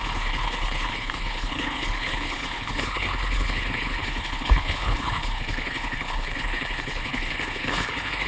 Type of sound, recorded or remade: remade